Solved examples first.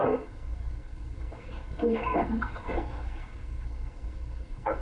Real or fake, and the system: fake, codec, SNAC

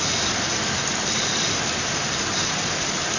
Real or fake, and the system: real